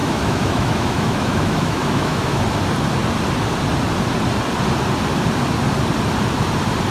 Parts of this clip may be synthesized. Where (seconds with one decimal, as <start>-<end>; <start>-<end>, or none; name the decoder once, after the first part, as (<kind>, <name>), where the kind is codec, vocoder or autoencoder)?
0.0-2.4 (autoencoder, DAC-VAE)